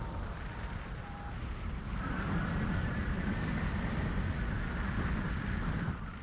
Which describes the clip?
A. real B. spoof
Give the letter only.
A